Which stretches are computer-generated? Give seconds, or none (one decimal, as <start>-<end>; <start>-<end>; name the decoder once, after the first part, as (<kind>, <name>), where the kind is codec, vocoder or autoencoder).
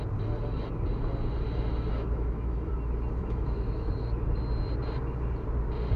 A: 1.9-2.7 (autoencoder, DAC-VAE); 3.2-3.9